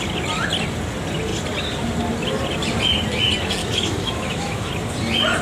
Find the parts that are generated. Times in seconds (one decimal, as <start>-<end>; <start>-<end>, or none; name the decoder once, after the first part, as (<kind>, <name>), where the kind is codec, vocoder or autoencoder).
3.6-4.7 (autoencoder, DAC-VAE)